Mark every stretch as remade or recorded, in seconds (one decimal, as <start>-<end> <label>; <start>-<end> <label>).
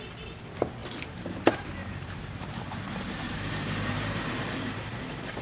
0.0-1.8 recorded; 1.8-5.0 remade; 5.0-5.4 recorded